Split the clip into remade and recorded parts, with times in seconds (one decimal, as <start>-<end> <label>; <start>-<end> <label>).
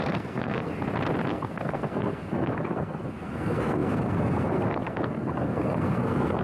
0.0-0.7 remade; 0.7-1.3 recorded; 1.3-6.4 remade